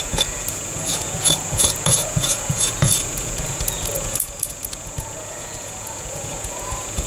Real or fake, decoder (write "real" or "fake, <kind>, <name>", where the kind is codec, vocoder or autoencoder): fake, vocoder, Vocos